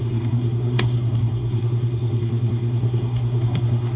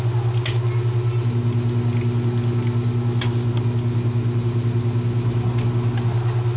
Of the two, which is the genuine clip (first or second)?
second